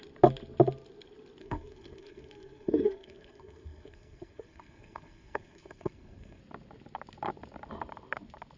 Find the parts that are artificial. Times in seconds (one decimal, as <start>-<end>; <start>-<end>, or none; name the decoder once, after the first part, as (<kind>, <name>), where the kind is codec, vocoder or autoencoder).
1.4-6.4 (codec, SNAC)

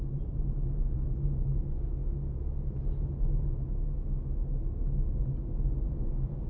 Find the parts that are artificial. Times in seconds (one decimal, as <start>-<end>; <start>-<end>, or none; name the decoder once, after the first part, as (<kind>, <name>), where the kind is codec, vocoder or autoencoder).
none

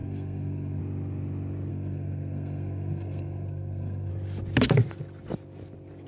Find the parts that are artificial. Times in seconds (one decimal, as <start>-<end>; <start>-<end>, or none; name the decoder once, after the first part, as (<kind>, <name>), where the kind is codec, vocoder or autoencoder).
0.0-0.8 (codec, SNAC); 1.7-4.1

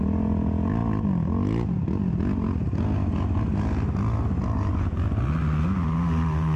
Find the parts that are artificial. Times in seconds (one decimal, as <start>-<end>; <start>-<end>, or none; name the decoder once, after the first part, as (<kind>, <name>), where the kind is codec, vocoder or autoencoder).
none

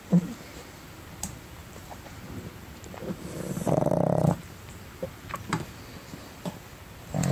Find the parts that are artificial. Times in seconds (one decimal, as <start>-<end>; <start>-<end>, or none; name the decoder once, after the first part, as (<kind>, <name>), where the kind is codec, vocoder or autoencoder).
1.6-5.7 (vocoder, BigVGAN v2)